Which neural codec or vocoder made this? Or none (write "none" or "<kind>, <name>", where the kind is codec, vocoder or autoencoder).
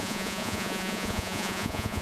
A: vocoder, Vocos